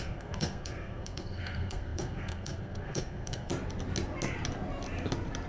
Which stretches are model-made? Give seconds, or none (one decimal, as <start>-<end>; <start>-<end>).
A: 0.0-3.5

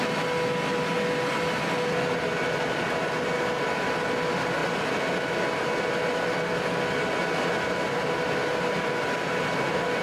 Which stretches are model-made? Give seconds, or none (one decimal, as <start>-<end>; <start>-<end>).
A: none

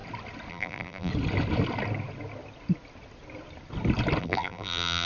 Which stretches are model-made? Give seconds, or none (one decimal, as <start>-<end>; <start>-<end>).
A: 0.5-1.1; 4.2-5.1